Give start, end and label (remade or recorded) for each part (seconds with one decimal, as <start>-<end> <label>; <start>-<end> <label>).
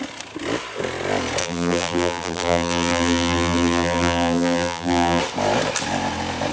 0.0-1.4 recorded; 1.4-5.2 remade; 5.2-6.5 recorded